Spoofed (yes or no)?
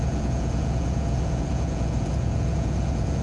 yes